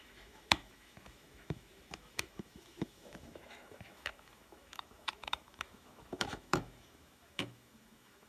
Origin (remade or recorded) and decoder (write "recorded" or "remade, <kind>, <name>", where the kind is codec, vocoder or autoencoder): remade, autoencoder, DAC-VAE